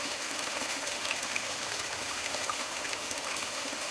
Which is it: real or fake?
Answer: fake